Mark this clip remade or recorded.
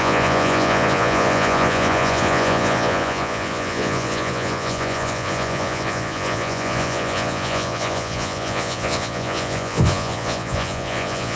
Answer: remade